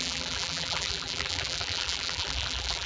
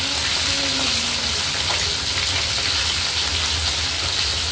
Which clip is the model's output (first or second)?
first